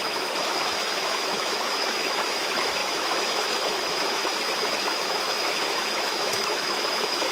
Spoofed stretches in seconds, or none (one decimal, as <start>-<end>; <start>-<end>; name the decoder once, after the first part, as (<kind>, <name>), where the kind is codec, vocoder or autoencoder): 0.0-7.3 (autoencoder, DAC-VAE)

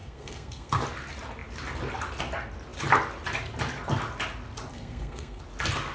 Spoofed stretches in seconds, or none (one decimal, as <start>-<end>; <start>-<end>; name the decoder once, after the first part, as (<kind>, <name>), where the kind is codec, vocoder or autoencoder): 0.0-0.8 (codec, SNAC); 4.7-5.4

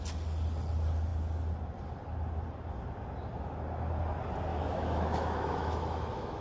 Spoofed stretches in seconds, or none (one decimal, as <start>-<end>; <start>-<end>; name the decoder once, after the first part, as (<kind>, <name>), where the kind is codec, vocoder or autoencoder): 4.5-6.4 (autoencoder, DAC-VAE)

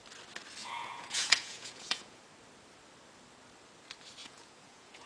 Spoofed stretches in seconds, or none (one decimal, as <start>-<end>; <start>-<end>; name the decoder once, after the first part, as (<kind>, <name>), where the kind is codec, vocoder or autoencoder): 0.6-2.2 (vocoder, Vocos); 4.2-5.1

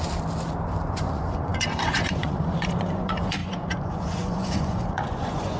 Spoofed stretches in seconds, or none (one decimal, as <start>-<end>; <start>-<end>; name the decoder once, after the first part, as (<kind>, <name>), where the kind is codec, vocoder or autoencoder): 0.9-5.6 (vocoder, Vocos)

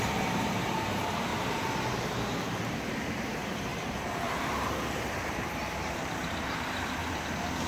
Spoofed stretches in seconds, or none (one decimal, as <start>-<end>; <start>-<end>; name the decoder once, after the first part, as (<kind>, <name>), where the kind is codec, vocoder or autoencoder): 0.0-1.3 (vocoder, BigVGAN v2); 2.7-7.0

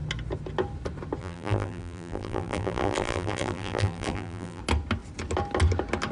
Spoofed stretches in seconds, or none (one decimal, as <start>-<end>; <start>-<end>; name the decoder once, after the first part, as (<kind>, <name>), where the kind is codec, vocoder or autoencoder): 1.2-4.6 (vocoder, BigVGAN v2)

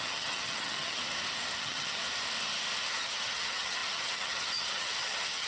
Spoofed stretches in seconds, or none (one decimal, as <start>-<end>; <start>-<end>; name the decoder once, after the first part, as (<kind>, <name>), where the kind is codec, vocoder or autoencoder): 0.0-1.0 (vocoder, HiFi-GAN); 1.6-2.0; 2.9-5.5